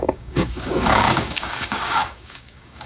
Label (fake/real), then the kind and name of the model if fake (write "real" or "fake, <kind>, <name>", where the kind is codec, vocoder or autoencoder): fake, codec, DAC